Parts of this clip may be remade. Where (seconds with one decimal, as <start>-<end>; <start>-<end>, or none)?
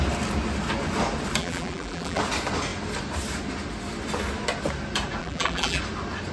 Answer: 1.4-2.2; 5.2-5.8